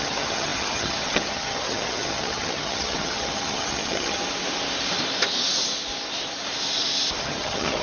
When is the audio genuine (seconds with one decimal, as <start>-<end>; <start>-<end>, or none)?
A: 4.2-7.2